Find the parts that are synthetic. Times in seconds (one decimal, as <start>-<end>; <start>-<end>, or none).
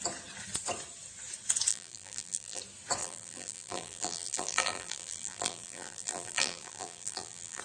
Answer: 1.7-2.6; 3.0-7.6